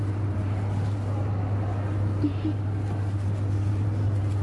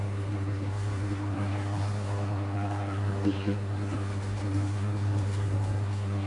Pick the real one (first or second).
first